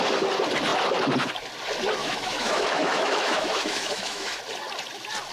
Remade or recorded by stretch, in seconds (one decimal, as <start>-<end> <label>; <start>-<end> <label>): 0.0-2.0 recorded; 2.0-4.4 remade; 4.4-5.3 recorded